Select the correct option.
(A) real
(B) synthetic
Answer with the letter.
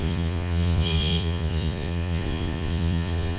B